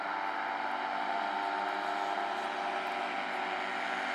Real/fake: real